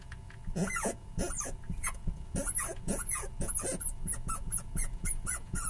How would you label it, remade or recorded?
remade